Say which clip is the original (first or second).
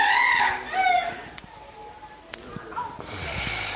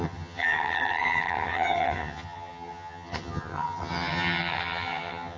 first